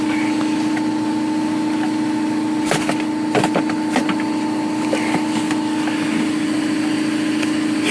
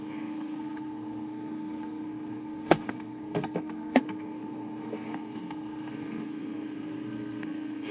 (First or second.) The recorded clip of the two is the first